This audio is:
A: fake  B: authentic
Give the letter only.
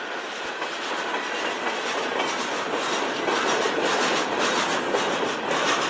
B